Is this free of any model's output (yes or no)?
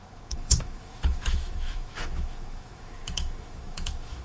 no